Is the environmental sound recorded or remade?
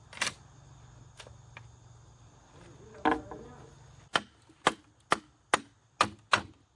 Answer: recorded